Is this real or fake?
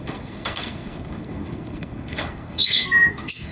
fake